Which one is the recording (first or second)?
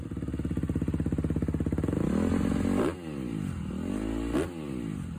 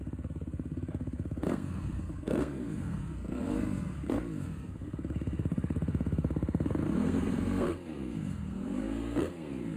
first